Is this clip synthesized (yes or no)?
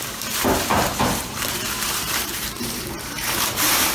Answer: yes